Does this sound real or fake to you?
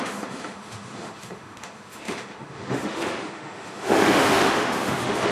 fake